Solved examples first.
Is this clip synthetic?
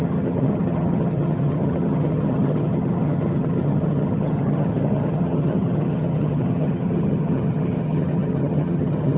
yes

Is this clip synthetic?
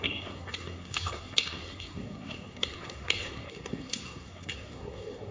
yes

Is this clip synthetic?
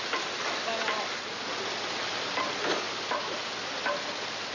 no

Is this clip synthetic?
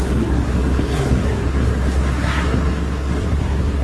yes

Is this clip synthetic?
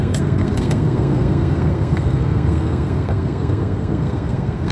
yes